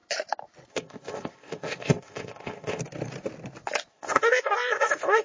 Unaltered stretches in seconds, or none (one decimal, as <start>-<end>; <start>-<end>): 0.0-0.7; 2.8-3.9